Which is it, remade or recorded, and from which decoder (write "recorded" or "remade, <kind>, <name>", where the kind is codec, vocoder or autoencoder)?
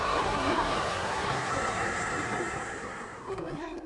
remade, codec, SNAC